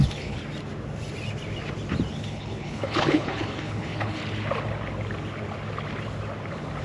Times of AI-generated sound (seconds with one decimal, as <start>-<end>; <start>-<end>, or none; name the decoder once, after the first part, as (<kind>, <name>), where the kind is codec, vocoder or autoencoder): 0.0-0.4 (codec, HILCodec); 2.1-4.2